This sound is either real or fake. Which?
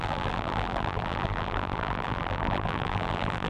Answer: fake